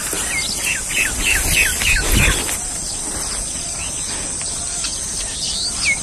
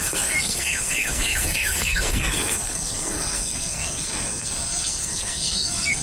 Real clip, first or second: first